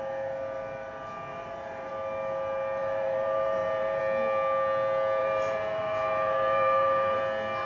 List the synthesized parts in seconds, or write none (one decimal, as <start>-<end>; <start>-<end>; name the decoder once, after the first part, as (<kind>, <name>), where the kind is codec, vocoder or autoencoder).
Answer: 1.3-1.9 (vocoder, BigVGAN v2); 2.8-4.0; 5.2-7.2